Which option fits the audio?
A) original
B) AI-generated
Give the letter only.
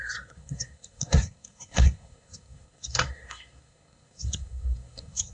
B